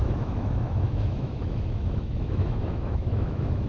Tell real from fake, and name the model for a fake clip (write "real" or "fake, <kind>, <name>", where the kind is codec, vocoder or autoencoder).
fake, autoencoder, DAC-VAE